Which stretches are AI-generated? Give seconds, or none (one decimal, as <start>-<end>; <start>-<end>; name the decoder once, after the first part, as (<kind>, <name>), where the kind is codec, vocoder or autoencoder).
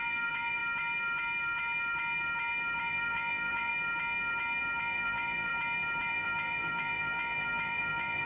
0.0-0.6 (vocoder, BigVGAN v2); 2.8-3.7; 4.8-5.5; 6.1-8.3